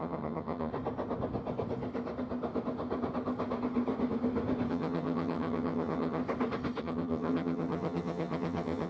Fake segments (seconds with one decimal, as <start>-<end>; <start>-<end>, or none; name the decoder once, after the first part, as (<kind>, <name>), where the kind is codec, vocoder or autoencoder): 0.0-0.7 (vocoder, HiFi-GAN); 4.7-6.2; 6.8-8.9